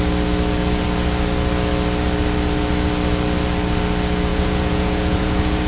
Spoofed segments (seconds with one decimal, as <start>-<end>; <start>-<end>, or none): 4.3-5.7